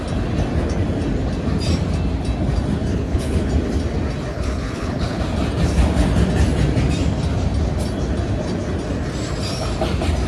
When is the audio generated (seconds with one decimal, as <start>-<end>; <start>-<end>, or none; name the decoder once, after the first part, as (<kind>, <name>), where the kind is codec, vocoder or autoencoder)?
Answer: 2.9-3.5 (codec, HILCodec); 4.3-5.2